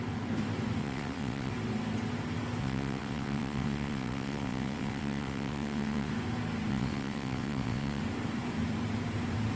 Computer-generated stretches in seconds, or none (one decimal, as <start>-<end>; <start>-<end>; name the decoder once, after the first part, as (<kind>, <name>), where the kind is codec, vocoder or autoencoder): 0.8-1.5 (vocoder, WaveNeXt); 2.6-6.1; 6.7-8.0